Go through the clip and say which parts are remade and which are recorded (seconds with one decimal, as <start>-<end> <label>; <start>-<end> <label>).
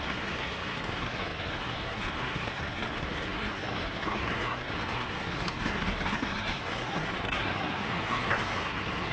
0.0-9.1 remade